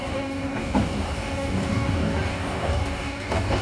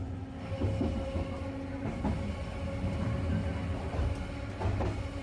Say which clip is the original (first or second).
second